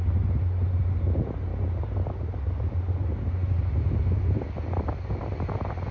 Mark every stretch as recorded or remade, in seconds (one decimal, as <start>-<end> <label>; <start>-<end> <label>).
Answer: 0.0-5.9 recorded